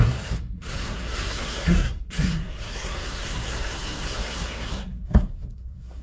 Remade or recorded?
remade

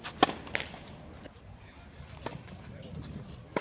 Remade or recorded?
recorded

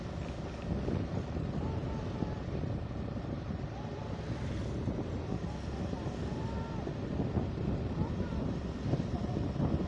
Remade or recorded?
recorded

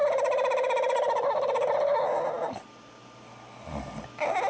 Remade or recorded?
recorded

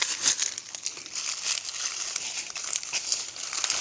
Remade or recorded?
recorded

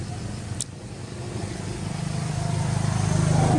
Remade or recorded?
recorded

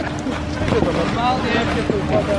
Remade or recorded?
recorded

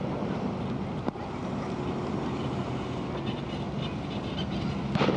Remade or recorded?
recorded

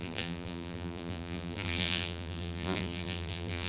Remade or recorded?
remade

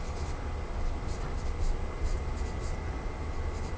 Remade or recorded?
recorded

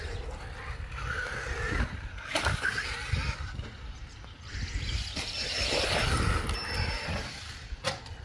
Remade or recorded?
remade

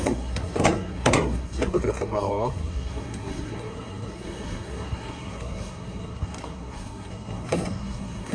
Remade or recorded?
remade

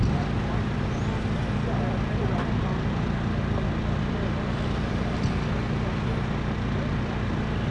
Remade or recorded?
recorded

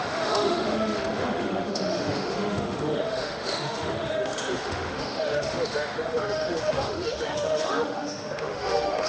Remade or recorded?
remade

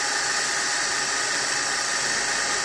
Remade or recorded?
recorded